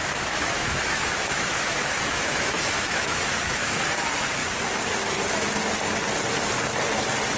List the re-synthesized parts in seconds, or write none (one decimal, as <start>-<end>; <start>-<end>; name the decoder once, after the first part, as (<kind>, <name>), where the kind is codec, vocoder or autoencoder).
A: 0.0-3.8 (autoencoder, DAC-VAE)